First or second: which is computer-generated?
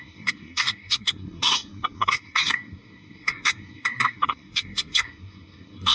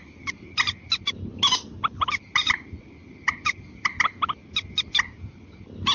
first